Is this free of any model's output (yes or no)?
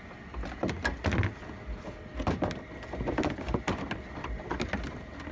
yes